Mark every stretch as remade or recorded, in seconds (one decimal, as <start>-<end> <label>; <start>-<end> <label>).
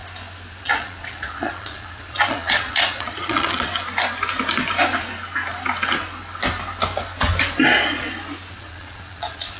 0.0-0.6 recorded; 0.6-3.7 remade; 3.7-8.5 recorded; 8.5-9.6 remade